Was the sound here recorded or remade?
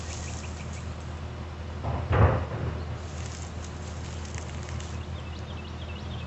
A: recorded